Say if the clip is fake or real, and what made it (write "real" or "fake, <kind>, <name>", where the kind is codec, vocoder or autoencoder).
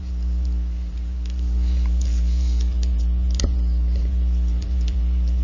fake, vocoder, BigVGAN v2